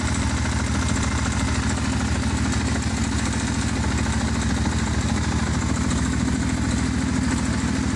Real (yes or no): yes